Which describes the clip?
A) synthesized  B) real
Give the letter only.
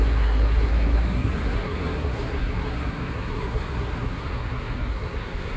A